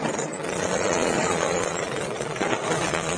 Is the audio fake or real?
fake